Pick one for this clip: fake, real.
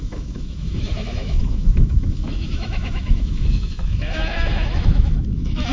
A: fake